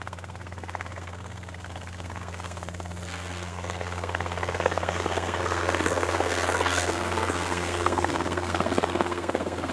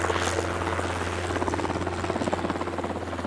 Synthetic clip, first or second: first